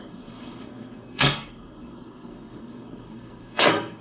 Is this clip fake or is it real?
fake